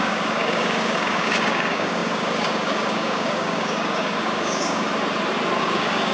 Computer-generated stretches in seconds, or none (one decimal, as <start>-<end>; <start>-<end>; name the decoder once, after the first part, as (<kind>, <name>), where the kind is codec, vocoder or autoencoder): 0.0-4.9 (codec, DAC); 5.6-6.1